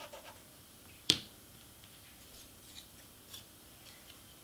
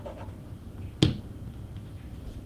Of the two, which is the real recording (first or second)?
second